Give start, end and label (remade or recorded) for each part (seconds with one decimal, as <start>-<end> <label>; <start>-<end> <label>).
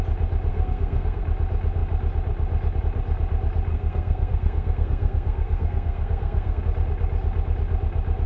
0.0-0.5 recorded; 0.5-1.2 remade; 1.2-3.7 recorded; 3.7-6.6 remade; 6.6-8.3 recorded